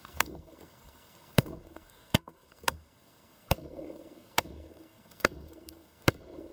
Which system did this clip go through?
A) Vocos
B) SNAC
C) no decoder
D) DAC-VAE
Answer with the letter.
B